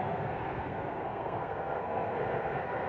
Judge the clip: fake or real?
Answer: fake